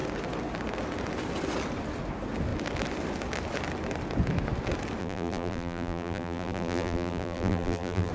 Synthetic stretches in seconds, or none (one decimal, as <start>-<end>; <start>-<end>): 5.0-8.1